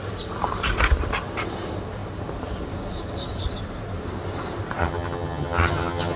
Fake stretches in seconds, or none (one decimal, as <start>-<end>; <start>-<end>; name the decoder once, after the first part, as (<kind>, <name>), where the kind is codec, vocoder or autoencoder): 4.8-6.2 (vocoder, HiFi-GAN)